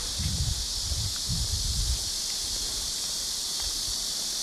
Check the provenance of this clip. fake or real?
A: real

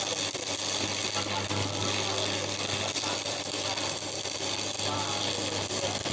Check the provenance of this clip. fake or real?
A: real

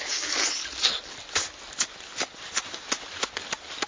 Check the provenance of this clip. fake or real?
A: real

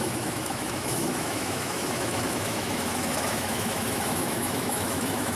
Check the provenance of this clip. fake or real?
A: fake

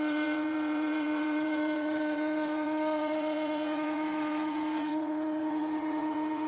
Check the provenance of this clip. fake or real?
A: fake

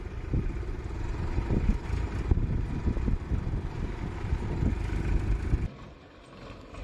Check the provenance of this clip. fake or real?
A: real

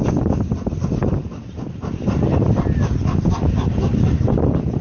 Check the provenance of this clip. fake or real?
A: real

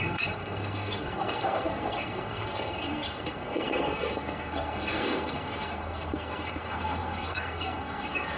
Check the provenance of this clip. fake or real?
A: fake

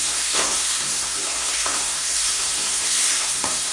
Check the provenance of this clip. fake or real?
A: fake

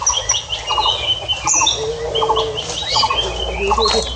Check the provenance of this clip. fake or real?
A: real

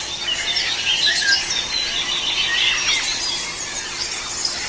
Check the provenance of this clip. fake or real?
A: real